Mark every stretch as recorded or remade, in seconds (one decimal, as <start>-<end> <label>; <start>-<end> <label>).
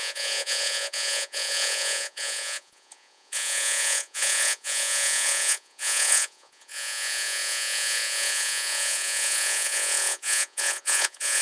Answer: 0.0-11.4 remade